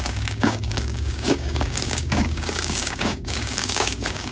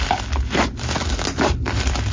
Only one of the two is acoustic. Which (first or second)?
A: second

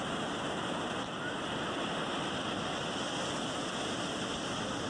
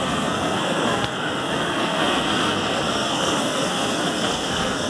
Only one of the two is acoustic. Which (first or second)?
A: first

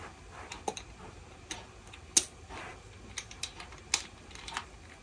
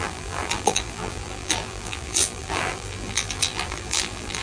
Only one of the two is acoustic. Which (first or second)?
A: first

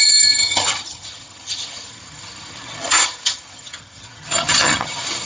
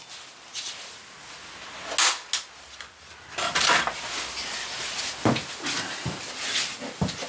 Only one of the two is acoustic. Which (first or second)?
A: second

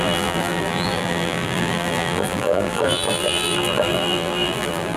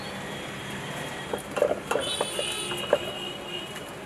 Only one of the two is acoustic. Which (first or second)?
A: second